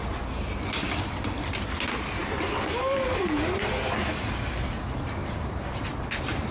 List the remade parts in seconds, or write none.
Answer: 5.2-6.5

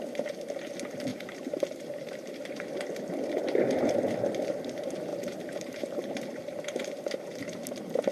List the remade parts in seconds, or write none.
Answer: 1.1-2.4; 5.1-6.0

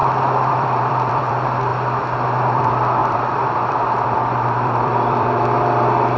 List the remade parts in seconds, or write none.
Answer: 0.5-1.7; 2.4-6.2

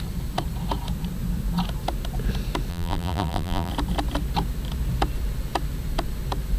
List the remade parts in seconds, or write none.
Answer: 2.7-3.7

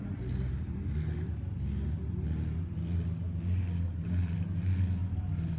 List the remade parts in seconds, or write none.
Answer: 5.0-5.6